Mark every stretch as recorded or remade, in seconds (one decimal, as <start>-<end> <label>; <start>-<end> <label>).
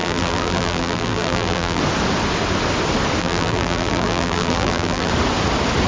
0.0-1.8 remade; 1.8-3.2 recorded; 3.2-5.1 remade; 5.1-5.9 recorded